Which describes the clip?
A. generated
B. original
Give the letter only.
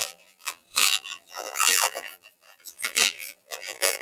A